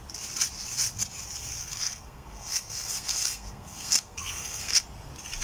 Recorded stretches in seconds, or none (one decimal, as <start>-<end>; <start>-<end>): 0.0-1.6; 4.8-5.4